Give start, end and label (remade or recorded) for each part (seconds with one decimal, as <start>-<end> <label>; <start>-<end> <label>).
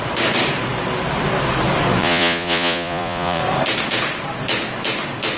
0.0-2.0 recorded; 2.0-3.4 remade; 3.4-5.4 recorded